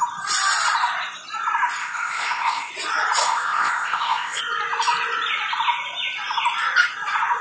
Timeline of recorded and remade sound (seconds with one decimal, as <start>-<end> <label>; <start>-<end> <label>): 0.0-1.8 recorded; 1.8-2.7 remade; 2.7-3.2 recorded; 3.2-4.4 remade; 4.4-7.4 recorded